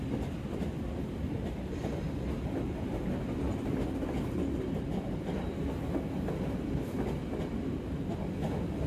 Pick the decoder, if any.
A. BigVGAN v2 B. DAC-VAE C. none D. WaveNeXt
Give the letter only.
C